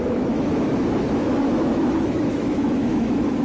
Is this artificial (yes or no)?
yes